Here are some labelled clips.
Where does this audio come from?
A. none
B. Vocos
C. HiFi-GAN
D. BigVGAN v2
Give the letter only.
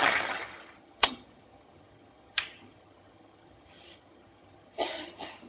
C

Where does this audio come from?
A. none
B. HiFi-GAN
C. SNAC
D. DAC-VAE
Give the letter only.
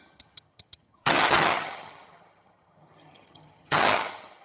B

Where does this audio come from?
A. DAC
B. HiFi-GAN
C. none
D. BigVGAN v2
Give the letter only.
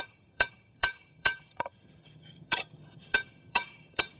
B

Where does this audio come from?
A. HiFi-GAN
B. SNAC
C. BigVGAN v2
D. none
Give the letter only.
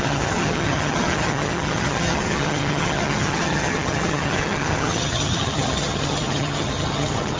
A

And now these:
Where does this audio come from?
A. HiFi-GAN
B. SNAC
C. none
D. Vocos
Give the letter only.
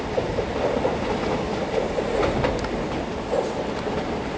C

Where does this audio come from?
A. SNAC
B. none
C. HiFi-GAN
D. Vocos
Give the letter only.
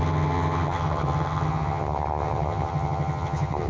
C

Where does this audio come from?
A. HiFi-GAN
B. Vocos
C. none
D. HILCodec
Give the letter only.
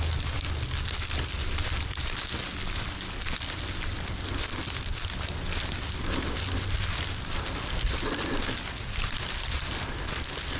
C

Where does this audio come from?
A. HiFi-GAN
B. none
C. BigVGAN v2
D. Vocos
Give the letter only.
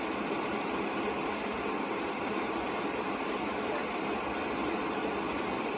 B